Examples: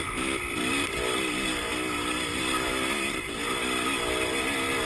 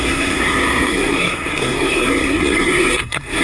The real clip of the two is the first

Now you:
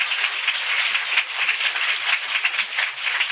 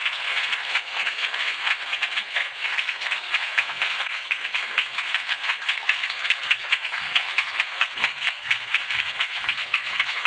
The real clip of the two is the first